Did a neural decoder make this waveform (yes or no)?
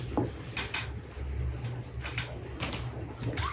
no